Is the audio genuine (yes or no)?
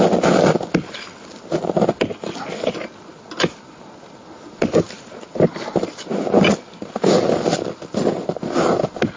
yes